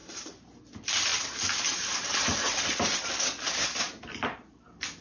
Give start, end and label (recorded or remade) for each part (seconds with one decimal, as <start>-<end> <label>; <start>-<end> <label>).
0.0-0.6 remade; 0.6-5.0 recorded